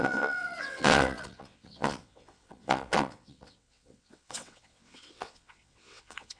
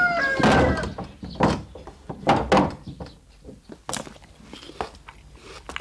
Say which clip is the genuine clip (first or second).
second